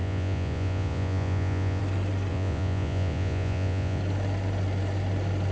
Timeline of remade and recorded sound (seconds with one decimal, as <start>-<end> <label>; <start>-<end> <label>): 0.0-1.8 remade; 1.8-2.3 recorded; 2.3-4.0 remade; 4.0-5.5 recorded